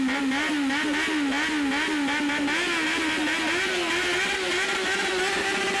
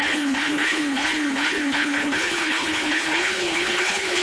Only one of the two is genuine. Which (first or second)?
first